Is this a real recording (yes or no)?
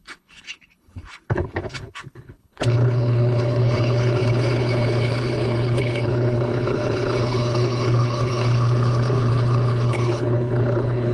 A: no